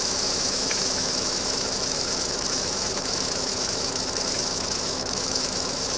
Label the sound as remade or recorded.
remade